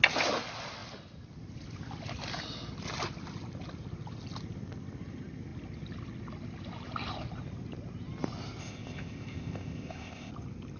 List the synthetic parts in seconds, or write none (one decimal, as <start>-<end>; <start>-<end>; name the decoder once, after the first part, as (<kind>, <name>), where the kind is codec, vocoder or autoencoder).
8.6-10.3 (codec, ZipCodec)